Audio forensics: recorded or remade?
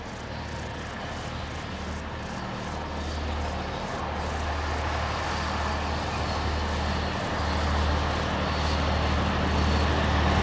recorded